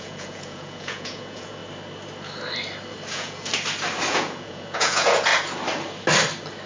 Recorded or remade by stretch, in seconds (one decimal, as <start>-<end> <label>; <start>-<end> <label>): 0.0-1.6 remade; 1.6-3.1 recorded; 3.1-3.5 remade; 3.5-4.1 recorded; 4.1-5.3 remade; 5.3-6.7 recorded